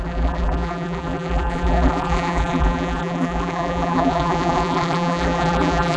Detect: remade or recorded remade